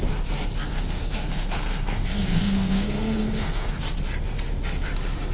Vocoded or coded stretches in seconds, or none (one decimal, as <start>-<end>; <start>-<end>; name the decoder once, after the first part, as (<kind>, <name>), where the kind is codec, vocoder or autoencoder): 0.7-3.8 (codec, SNAC)